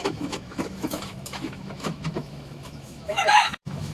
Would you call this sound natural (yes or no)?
no